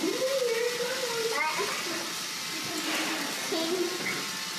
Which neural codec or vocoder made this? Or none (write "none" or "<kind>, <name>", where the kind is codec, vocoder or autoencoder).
none